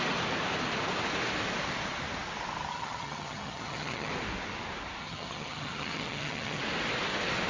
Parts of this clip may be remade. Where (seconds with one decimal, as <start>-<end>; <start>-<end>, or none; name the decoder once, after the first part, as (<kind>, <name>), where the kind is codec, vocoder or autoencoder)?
2.7-4.1 (vocoder, HiFi-GAN); 5.0-6.6